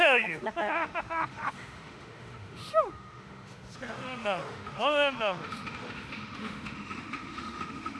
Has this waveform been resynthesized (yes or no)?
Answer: yes